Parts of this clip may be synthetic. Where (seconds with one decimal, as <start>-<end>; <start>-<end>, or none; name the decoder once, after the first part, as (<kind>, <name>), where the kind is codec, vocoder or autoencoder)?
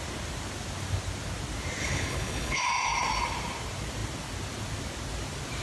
1.8-2.6 (codec, HILCodec)